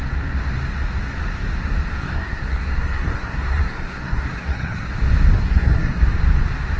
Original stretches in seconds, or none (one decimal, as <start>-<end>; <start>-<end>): 0.0-2.0; 4.9-5.4; 6.0-6.8